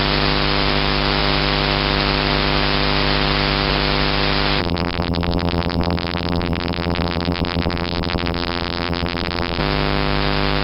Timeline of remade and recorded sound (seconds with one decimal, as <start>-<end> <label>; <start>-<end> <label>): 0.0-4.6 recorded; 4.6-9.6 remade; 9.6-10.6 recorded